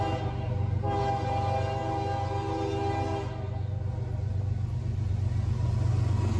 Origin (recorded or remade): recorded